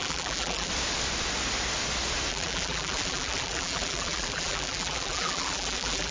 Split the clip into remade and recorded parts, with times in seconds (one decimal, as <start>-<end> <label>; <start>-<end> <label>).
0.0-0.7 remade; 0.7-2.3 recorded; 2.3-6.1 remade